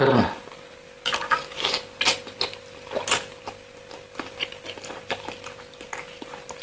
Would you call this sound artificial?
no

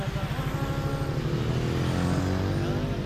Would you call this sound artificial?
no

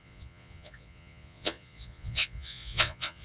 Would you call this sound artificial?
yes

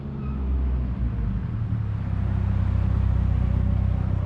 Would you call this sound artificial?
no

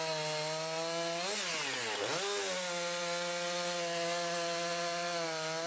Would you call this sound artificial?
no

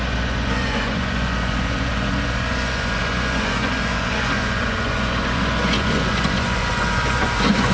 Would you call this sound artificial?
yes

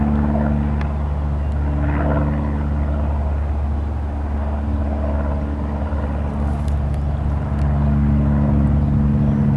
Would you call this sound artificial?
no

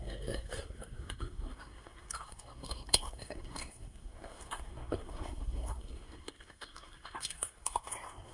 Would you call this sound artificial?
yes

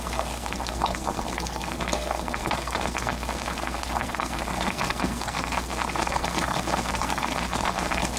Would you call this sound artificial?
yes